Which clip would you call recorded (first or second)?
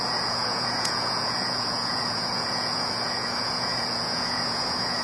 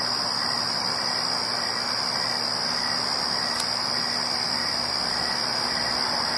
second